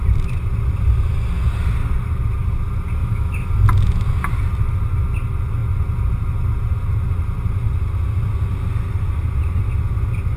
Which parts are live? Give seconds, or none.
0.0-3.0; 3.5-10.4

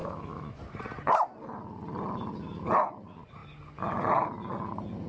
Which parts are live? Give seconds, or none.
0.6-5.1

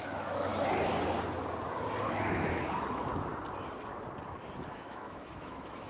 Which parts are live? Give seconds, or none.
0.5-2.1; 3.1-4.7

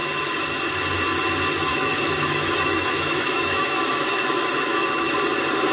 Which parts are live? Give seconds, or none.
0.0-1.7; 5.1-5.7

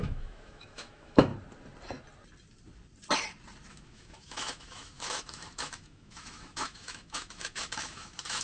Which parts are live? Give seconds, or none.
1.3-3.7

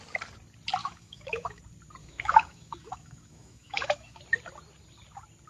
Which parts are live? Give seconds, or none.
0.0-0.8; 1.6-2.0; 4.2-5.5